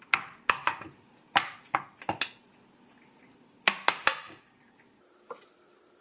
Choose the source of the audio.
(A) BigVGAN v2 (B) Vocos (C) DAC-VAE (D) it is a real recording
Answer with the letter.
D